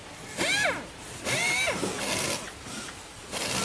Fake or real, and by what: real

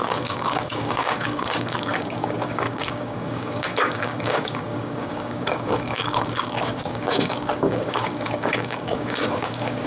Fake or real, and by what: fake, codec, DAC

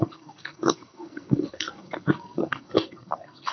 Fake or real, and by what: fake, codec, SNAC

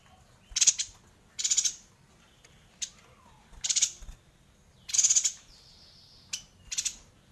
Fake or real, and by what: real